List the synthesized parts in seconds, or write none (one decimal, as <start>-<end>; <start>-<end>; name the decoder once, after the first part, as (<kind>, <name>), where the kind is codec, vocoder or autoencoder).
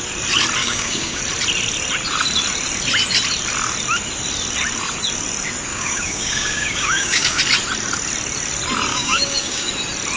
0.6-1.2 (codec, DAC); 5.7-7.4; 8.9-9.7